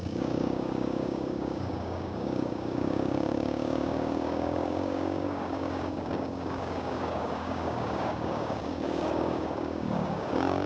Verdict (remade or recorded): remade